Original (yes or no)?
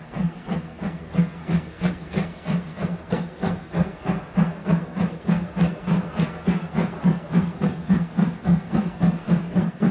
no